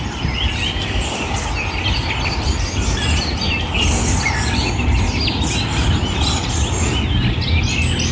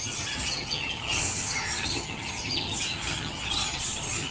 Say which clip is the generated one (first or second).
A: second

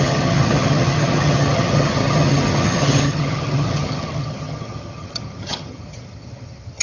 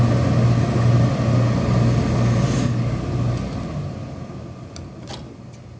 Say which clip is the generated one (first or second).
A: first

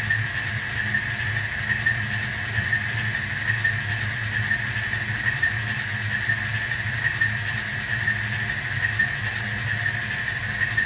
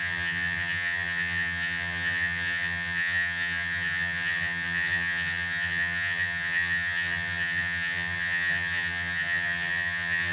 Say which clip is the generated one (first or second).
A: second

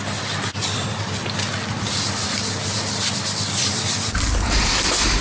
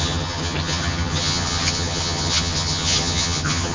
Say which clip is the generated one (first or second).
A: second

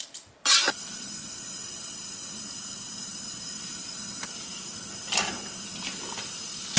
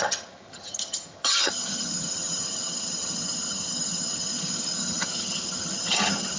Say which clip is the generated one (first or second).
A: second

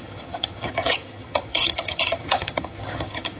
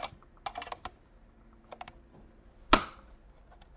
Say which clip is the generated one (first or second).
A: first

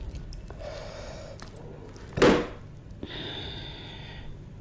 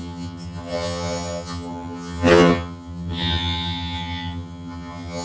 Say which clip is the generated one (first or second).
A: second